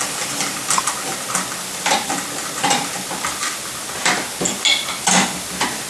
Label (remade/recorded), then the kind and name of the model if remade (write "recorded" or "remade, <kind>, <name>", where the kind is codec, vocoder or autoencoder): recorded